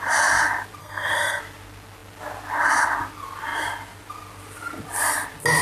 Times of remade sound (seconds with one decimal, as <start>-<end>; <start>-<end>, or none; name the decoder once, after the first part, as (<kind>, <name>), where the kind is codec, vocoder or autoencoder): 0.8-1.4 (codec, SNAC)